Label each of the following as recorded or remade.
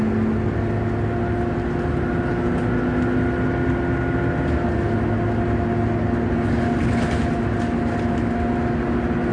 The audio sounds recorded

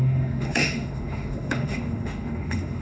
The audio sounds remade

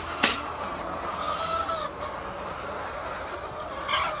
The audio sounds recorded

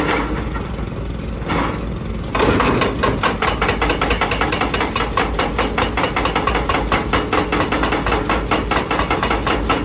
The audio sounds recorded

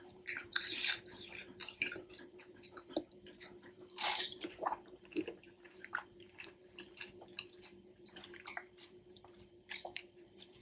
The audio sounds remade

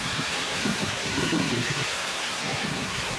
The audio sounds remade